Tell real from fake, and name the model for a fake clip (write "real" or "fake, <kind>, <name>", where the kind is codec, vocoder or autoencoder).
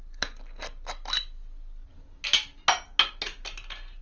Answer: real